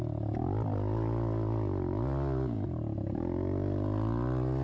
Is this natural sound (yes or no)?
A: yes